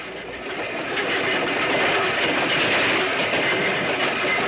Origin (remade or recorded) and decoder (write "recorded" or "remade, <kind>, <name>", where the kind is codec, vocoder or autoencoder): recorded